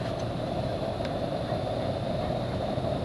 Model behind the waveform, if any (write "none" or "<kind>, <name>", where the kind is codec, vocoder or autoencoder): vocoder, BigVGAN v2